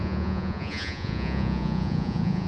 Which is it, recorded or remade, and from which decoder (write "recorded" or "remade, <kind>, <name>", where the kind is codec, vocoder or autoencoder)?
remade, vocoder, Vocos